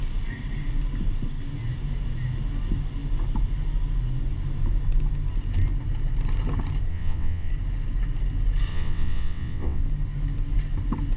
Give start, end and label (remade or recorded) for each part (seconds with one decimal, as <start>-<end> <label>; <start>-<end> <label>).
0.0-6.9 recorded; 6.9-7.5 remade; 7.5-8.7 recorded; 8.7-9.8 remade; 9.8-11.2 recorded